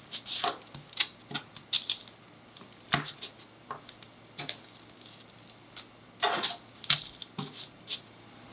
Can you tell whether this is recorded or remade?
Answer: recorded